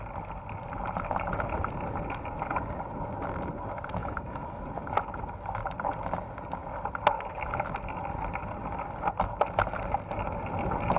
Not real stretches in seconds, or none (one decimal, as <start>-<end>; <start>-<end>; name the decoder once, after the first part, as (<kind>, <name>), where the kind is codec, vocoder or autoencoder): 4.0-4.6 (autoencoder, DAC-VAE)